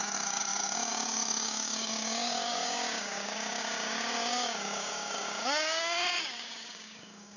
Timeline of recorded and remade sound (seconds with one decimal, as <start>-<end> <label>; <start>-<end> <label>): 0.0-7.4 remade